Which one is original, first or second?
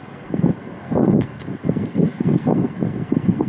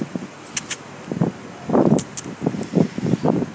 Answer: second